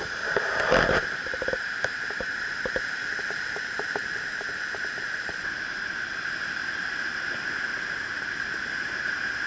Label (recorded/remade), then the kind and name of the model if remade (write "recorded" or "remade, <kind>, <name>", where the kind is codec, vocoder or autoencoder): recorded